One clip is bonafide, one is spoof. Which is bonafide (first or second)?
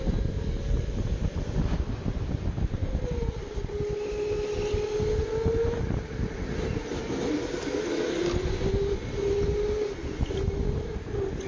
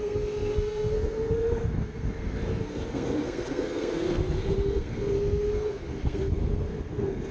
first